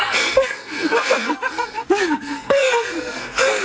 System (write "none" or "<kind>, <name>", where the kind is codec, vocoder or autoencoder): codec, SNAC